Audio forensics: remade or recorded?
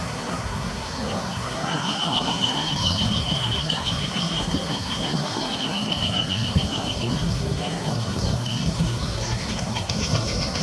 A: remade